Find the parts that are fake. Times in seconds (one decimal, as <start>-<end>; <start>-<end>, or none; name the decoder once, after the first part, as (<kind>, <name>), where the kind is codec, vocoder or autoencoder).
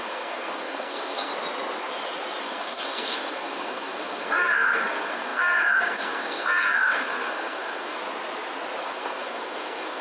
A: 0.0-1.3 (codec, SNAC); 2.4-8.0; 8.8-10.0